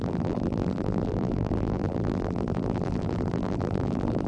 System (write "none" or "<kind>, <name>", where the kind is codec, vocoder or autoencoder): vocoder, BigVGAN v2